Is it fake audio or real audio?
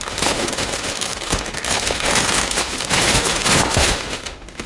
fake